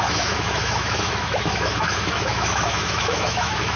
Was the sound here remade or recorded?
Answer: remade